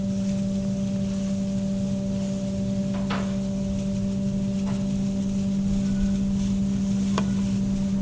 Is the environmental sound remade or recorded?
recorded